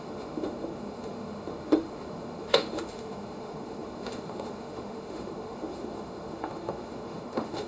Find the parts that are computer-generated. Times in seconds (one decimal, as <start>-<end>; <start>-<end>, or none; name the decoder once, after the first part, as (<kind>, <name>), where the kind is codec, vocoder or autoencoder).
0.0-7.7 (autoencoder, DAC-VAE)

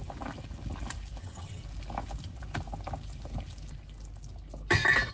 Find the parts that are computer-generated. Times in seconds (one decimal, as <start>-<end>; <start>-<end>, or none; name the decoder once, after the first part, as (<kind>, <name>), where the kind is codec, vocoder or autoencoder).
1.2-1.6 (vocoder, HiFi-GAN)

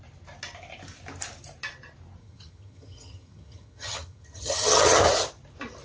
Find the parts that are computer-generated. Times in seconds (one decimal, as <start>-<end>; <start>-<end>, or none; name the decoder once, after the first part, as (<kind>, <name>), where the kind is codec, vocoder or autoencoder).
2.2-5.0 (vocoder, HiFi-GAN)

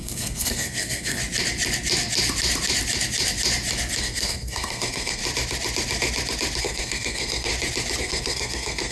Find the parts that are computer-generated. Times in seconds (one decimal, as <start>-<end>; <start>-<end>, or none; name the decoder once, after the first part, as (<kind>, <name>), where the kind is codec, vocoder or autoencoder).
0.0-1.2 (codec, SNAC); 4.0-5.2; 6.6-7.5; 8.0-8.9

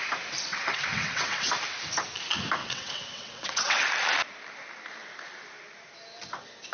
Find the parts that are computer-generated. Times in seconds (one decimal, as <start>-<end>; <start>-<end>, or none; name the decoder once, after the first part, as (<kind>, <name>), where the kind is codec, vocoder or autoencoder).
0.5-1.5 (vocoder, WaveNeXt); 2.6-3.8